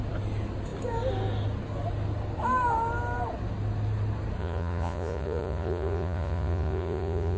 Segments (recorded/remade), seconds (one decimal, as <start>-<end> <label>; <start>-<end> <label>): 0.0-4.4 recorded; 4.4-7.4 remade